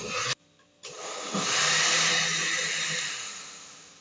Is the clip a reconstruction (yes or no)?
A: no